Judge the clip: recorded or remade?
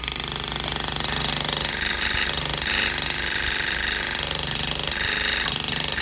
recorded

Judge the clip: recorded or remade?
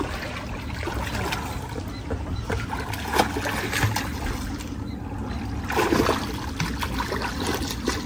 recorded